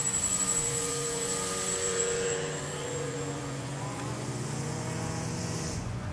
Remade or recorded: remade